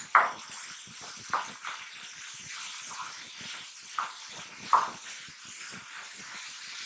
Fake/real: real